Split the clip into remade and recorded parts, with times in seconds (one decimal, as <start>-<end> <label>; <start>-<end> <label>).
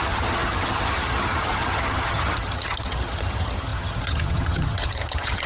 0.0-5.5 remade